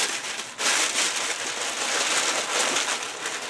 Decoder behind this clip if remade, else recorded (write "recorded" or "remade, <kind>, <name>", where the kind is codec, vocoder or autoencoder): recorded